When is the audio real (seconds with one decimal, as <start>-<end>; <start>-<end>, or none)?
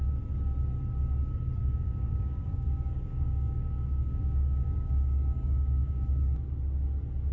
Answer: 0.0-1.6; 6.0-7.3